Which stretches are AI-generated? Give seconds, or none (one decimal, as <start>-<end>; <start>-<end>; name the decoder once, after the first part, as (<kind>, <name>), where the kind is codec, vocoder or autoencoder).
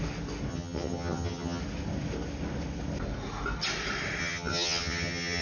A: 0.5-1.6 (vocoder, HiFi-GAN); 4.2-5.4